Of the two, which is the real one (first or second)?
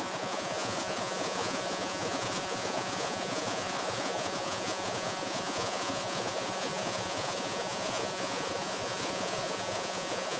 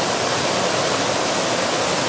second